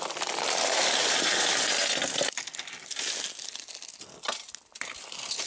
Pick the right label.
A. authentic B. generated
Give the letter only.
A